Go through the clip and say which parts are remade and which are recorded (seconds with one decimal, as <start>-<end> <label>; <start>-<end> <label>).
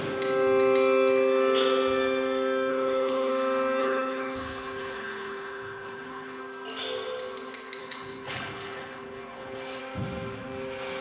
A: 0.0-2.7 recorded; 2.7-3.3 remade; 3.3-3.8 recorded; 3.8-6.4 remade; 6.4-7.8 recorded; 7.8-9.8 remade; 9.8-11.0 recorded